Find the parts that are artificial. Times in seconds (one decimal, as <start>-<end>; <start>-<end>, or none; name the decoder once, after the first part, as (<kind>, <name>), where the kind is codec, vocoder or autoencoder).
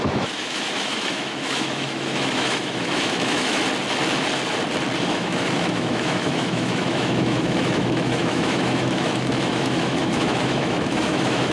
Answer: 0.0-3.6 (autoencoder, DAC-VAE); 5.1-11.5